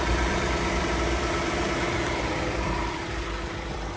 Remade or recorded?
remade